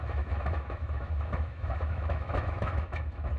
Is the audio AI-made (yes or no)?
yes